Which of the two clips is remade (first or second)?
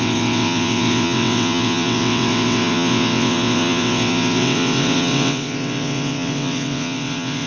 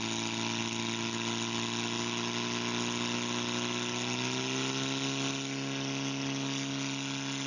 first